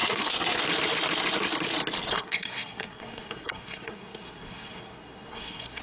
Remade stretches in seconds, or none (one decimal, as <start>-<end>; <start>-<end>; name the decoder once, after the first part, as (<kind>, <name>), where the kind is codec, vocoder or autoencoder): 0.0-0.6 (codec, SNAC); 2.1-5.8